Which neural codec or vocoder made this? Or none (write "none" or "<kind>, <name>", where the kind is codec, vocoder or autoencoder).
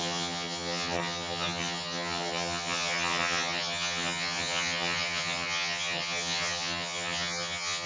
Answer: vocoder, HiFi-GAN